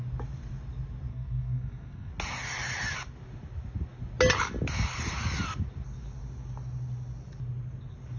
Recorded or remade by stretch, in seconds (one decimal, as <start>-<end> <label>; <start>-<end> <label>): 0.0-1.1 recorded; 1.1-2.1 remade; 2.1-8.2 recorded